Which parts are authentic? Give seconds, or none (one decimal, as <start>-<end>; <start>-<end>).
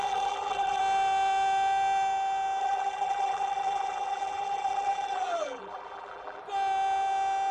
0.8-2.6; 6.4-7.5